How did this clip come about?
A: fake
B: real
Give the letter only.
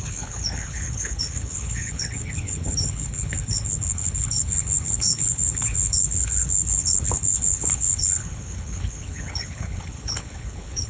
A